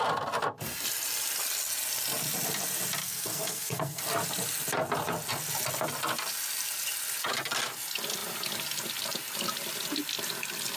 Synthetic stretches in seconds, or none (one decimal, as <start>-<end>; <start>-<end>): 3.0-4.0